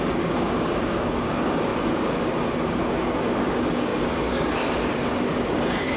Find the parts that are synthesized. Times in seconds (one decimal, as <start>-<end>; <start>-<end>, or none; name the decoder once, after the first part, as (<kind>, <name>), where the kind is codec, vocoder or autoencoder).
0.0-6.0 (codec, DAC)